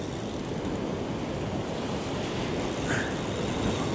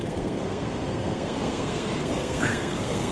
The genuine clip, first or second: first